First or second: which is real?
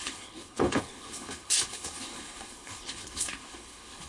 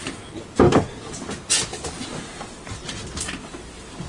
second